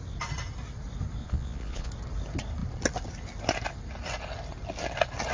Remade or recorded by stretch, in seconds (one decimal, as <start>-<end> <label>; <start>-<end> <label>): 0.0-1.2 recorded; 1.2-1.9 remade; 1.9-5.3 recorded

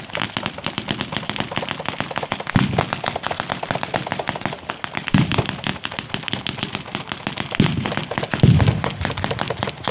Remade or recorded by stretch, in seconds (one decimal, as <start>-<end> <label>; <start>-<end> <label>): 0.0-9.9 recorded

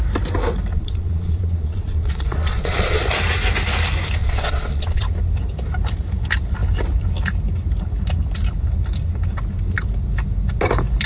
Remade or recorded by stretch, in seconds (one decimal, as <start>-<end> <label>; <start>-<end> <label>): 0.0-0.7 recorded; 0.7-3.0 remade; 3.0-4.2 recorded; 4.2-5.0 remade; 5.0-11.1 recorded

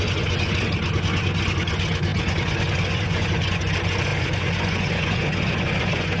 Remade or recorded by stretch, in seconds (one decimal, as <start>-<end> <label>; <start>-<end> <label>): 0.0-6.2 remade